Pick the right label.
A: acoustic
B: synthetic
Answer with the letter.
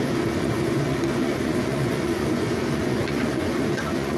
B